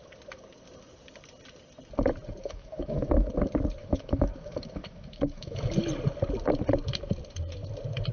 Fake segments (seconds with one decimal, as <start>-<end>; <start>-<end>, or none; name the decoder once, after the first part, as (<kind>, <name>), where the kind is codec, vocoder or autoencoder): 2.4-3.3 (autoencoder, DAC-VAE); 3.8-5.7